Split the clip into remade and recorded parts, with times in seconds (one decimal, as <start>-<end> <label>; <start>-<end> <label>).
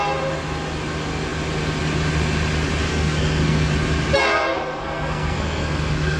0.0-2.9 recorded; 2.9-3.7 remade; 3.7-4.2 recorded; 4.2-6.2 remade